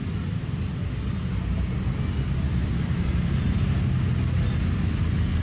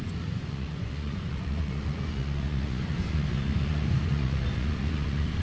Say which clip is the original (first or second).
first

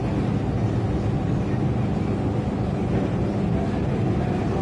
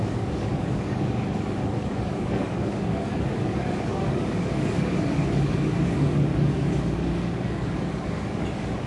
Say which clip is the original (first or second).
first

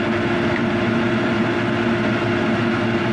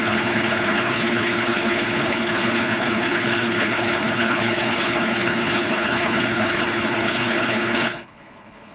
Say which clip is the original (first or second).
first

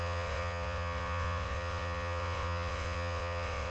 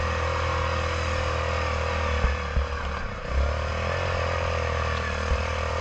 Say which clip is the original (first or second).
second